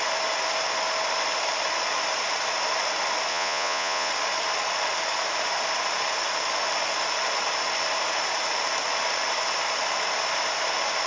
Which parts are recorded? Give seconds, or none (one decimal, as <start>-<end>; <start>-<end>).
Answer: 0.0-3.3; 4.1-11.1